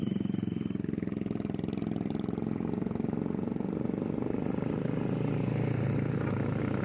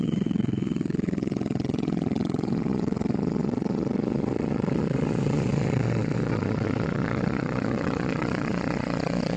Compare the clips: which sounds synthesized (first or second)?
second